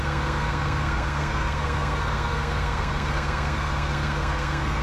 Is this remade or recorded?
remade